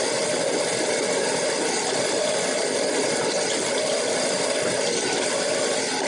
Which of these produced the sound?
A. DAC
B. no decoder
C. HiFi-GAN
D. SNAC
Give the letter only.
B